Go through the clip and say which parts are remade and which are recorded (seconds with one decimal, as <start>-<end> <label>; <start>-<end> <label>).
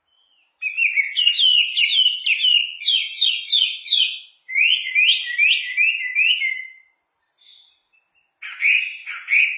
0.0-2.6 recorded; 2.6-4.9 remade; 4.9-9.6 recorded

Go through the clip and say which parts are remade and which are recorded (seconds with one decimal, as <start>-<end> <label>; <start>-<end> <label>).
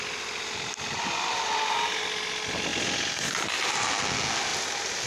0.0-5.1 recorded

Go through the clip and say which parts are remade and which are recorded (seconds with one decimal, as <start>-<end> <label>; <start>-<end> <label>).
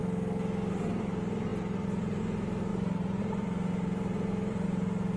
0.0-0.7 recorded; 0.7-2.7 remade; 2.7-3.2 recorded; 3.2-5.2 remade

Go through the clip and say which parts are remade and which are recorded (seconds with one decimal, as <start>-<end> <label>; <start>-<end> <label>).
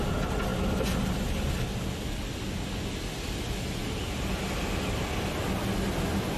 0.0-3.8 recorded; 3.8-4.3 remade; 4.3-6.4 recorded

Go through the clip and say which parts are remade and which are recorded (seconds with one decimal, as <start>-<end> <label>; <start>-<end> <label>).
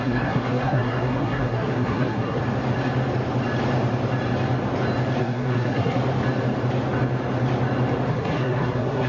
0.0-2.4 remade; 2.4-5.2 recorded; 5.2-6.0 remade; 6.0-8.1 recorded; 8.1-9.1 remade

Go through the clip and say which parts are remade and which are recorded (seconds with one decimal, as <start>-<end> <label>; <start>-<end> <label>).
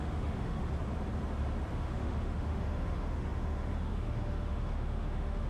0.0-0.6 remade; 0.6-1.7 recorded; 1.7-5.5 remade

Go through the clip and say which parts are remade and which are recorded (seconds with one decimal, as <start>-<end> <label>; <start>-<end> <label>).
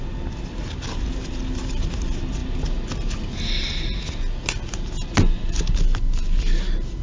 0.0-7.0 recorded